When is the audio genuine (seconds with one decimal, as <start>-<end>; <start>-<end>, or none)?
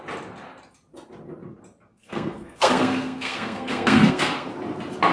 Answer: 0.0-1.9; 4.5-5.1